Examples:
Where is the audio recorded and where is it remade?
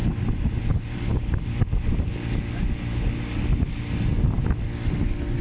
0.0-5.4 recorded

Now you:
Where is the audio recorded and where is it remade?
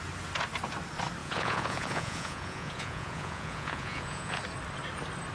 0.0-1.2 recorded; 1.2-4.4 remade; 4.4-5.3 recorded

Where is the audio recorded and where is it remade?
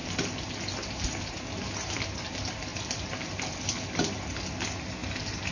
0.0-5.5 recorded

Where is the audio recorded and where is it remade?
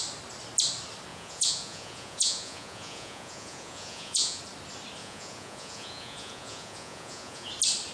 0.0-1.1 recorded; 1.1-4.4 remade; 4.4-5.0 recorded; 5.0-7.5 remade; 7.5-7.9 recorded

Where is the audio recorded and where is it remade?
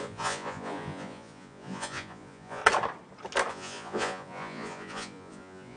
0.0-2.6 remade; 2.6-3.5 recorded; 3.5-5.8 remade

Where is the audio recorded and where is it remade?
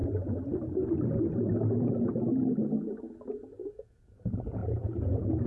0.0-3.3 recorded; 3.3-5.5 remade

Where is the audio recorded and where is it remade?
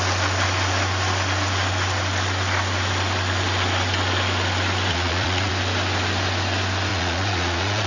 0.0-4.9 recorded; 4.9-5.5 remade; 5.5-6.9 recorded; 6.9-7.9 remade